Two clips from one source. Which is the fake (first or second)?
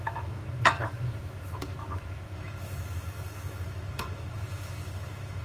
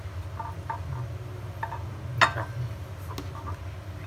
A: first